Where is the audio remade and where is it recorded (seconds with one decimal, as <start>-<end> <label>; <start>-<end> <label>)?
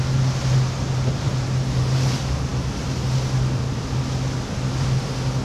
0.0-5.4 recorded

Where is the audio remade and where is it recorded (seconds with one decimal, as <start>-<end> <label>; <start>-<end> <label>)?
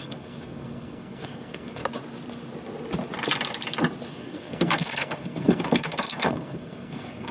0.0-1.8 remade; 1.8-4.1 recorded; 4.1-7.3 remade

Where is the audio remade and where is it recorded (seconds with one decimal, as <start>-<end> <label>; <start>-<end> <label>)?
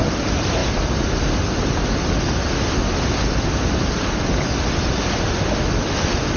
0.0-6.4 recorded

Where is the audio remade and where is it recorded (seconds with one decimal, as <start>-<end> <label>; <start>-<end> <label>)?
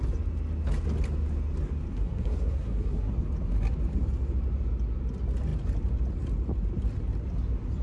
0.0-1.9 recorded; 1.9-3.1 remade; 3.1-7.8 recorded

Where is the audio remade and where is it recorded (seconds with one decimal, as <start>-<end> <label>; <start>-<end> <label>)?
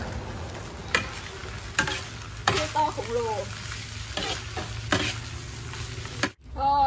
0.0-6.9 recorded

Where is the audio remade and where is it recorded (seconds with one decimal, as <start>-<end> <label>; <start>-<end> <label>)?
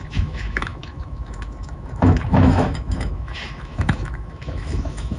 0.0-5.2 remade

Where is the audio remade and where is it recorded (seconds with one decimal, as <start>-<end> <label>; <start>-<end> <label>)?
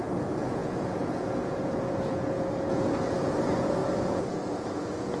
0.0-5.2 remade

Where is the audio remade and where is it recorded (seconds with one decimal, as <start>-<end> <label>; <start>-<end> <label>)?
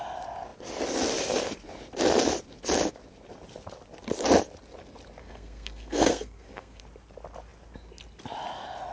0.0-5.2 recorded; 5.2-6.8 remade; 6.8-8.9 recorded